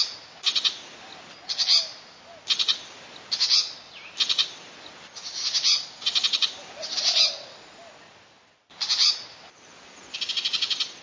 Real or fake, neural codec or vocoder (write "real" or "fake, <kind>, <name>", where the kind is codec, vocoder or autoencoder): real